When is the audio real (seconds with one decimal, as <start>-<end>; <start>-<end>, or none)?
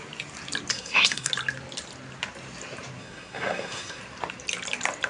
0.0-0.7; 1.3-3.0; 4.0-5.1